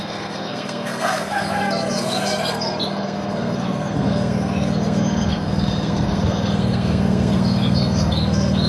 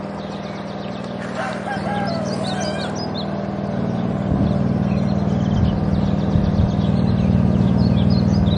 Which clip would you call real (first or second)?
second